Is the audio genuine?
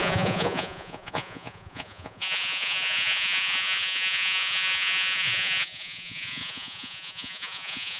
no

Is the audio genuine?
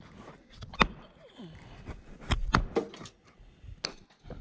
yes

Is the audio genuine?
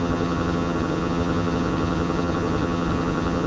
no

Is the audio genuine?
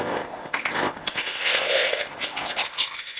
no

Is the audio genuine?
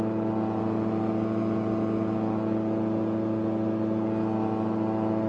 yes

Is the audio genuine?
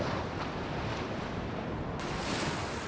yes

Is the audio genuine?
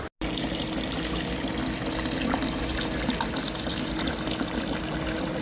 yes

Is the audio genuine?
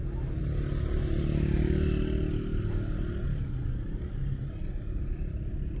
yes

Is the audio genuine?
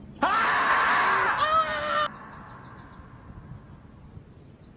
yes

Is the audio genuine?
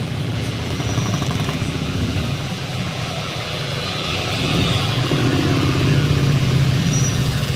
no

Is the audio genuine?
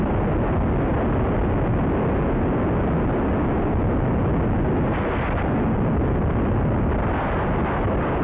yes